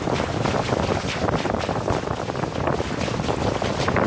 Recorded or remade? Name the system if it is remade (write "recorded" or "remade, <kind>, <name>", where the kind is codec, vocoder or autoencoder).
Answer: recorded